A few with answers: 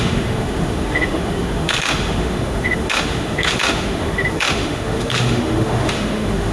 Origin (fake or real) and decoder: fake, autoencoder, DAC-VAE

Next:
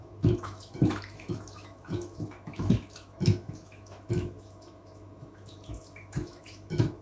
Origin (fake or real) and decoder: fake, autoencoder, DAC-VAE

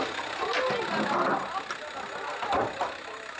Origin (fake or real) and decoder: real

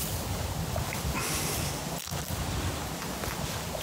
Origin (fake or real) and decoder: real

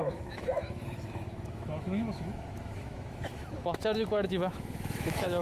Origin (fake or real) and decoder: fake, autoencoder, DAC-VAE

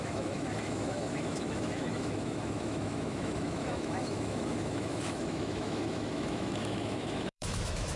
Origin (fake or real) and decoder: fake, autoencoder, DAC-VAE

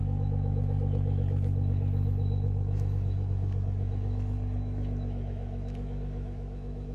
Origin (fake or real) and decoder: fake, autoencoder, DAC-VAE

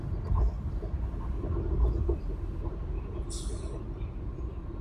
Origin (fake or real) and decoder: real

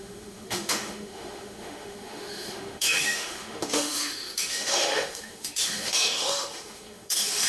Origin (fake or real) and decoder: fake, autoencoder, DAC-VAE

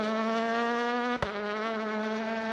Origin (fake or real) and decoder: fake, autoencoder, DAC-VAE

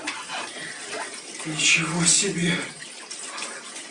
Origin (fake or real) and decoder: real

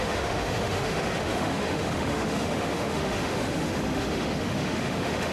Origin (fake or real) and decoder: fake, autoencoder, DAC-VAE